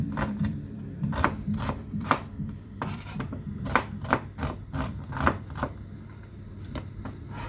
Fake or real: fake